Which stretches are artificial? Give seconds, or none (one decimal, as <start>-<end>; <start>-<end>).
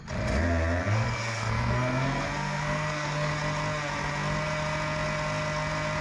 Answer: 0.8-3.3